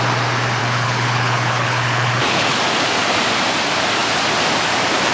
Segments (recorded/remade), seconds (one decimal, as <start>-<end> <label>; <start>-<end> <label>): 0.0-0.6 recorded; 0.6-2.6 remade; 2.6-5.1 recorded